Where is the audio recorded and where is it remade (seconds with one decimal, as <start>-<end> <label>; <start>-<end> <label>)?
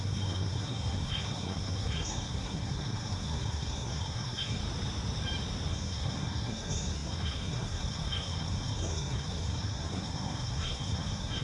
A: 0.0-4.6 remade; 4.6-5.7 recorded; 5.7-11.4 remade